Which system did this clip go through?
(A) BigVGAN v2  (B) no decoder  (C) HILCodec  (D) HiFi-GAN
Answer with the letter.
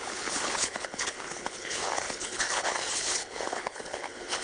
C